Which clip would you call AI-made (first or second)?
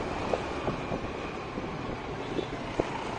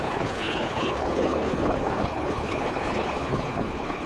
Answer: second